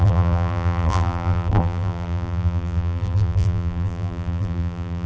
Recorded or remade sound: remade